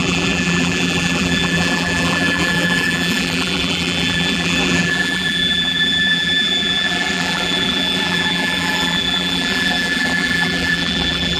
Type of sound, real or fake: fake